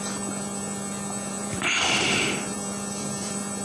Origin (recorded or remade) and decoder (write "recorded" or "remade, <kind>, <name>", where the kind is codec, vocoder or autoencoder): remade, vocoder, BigVGAN v2